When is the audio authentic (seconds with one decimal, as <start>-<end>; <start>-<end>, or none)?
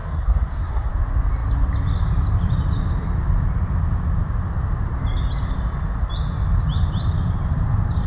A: 0.9-8.1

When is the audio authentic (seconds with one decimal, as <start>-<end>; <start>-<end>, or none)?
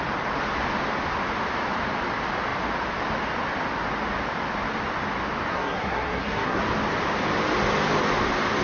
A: 0.0-5.5; 6.6-8.6